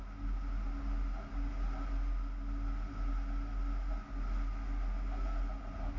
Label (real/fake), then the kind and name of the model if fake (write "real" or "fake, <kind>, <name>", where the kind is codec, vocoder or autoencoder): real